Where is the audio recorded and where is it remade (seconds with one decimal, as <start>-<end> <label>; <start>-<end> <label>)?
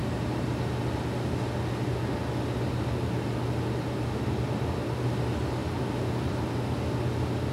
0.0-0.7 remade; 0.7-5.6 recorded; 5.6-6.4 remade; 6.4-7.5 recorded